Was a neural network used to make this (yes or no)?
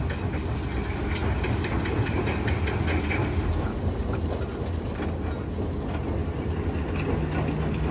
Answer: no